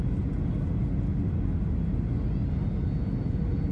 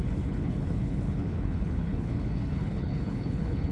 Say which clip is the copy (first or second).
second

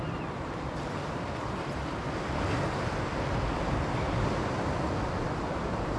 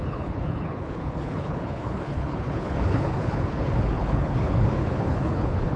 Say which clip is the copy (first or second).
second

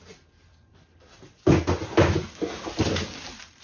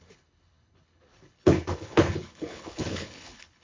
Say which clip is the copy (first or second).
second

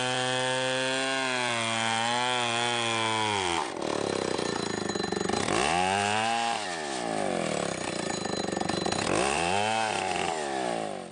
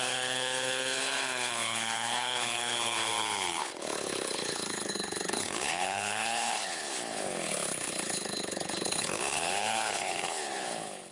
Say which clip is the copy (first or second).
second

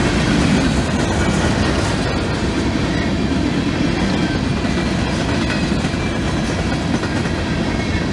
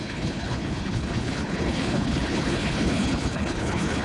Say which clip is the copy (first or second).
second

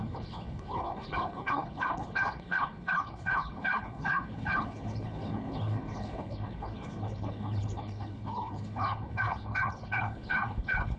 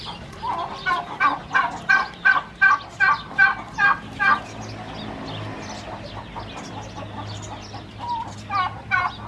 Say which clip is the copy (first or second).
first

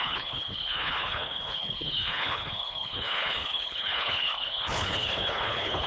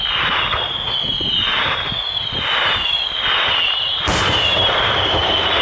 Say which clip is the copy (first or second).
first